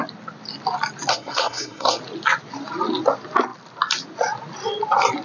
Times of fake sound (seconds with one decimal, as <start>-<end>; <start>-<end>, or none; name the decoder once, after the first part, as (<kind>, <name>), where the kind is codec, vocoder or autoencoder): 1.1-2.0 (codec, SNAC)